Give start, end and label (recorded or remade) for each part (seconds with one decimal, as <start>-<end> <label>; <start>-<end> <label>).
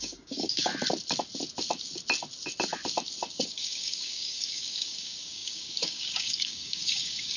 0.0-0.7 remade; 0.7-3.3 recorded; 3.3-7.4 remade